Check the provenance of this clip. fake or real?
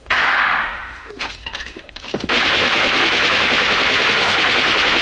fake